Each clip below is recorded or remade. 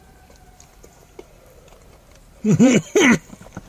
remade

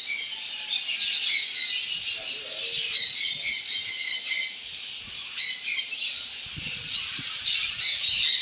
recorded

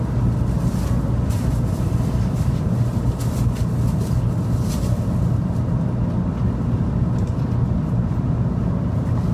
recorded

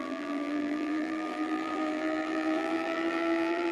remade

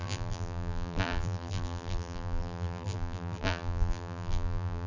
remade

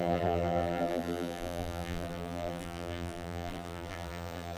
remade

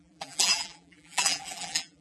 remade